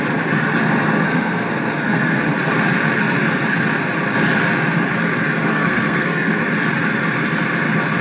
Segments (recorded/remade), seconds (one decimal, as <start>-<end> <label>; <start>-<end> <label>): 0.0-1.0 recorded; 1.0-2.2 remade; 2.2-5.5 recorded; 5.5-6.4 remade; 6.4-8.0 recorded